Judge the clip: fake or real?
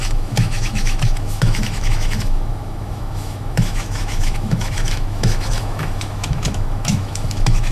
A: fake